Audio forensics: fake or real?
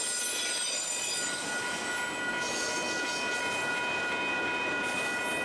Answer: real